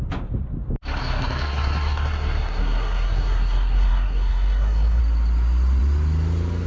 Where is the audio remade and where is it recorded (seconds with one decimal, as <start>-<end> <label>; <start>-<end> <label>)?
0.0-1.0 recorded; 1.0-5.0 remade; 5.0-6.7 recorded